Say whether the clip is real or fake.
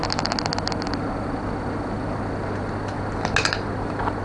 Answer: real